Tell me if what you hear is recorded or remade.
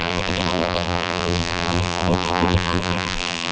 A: remade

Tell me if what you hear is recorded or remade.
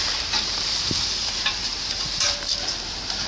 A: remade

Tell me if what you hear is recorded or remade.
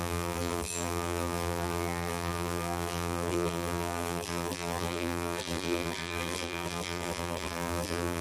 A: remade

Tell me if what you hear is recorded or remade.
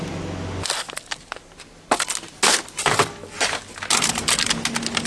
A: recorded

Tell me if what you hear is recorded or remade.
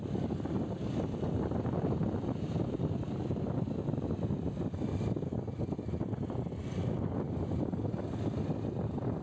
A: recorded